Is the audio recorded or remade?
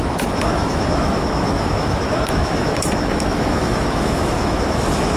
remade